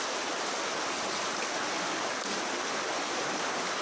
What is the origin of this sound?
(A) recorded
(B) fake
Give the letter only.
A